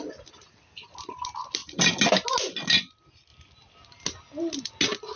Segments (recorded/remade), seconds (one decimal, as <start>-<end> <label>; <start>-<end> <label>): 0.0-5.2 recorded